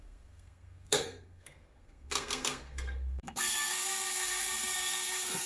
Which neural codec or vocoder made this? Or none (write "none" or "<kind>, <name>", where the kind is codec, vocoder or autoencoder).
codec, SNAC